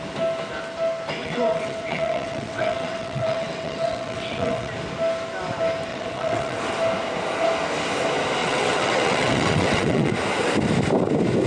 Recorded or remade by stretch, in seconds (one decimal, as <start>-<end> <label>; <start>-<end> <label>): 0.0-1.2 recorded; 1.2-4.7 remade; 4.7-5.9 recorded; 5.9-6.6 remade; 6.6-8.4 recorded; 8.4-10.1 remade; 10.1-11.5 recorded